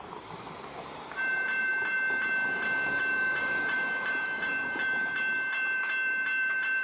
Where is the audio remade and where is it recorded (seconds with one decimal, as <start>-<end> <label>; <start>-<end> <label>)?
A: 0.0-2.4 remade; 2.4-3.4 recorded; 3.4-6.8 remade